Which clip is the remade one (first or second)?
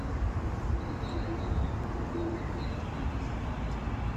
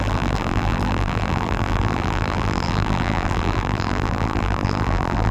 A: second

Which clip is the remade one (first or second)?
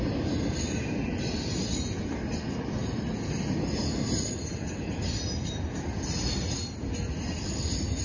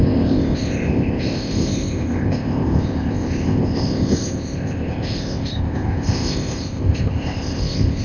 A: second